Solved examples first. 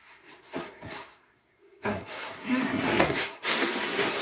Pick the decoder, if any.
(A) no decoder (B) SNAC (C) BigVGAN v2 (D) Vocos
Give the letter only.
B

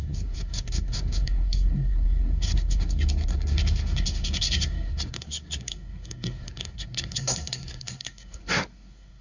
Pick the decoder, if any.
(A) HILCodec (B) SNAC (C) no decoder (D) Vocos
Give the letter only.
B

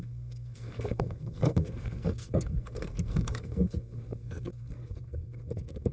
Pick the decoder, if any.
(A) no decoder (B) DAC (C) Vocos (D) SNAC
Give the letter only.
D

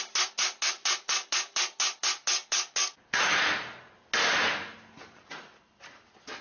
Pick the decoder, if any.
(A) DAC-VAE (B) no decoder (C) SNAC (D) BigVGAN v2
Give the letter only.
B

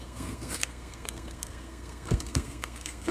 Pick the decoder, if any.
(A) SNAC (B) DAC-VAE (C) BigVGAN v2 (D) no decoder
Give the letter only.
A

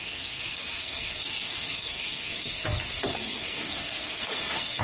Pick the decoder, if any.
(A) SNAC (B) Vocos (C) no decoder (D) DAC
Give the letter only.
A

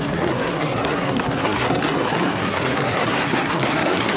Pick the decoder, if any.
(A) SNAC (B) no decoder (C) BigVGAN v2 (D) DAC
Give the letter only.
A